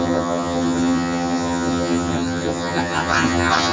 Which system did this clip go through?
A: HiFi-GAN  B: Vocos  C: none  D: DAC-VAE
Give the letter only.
A